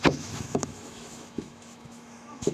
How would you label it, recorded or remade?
remade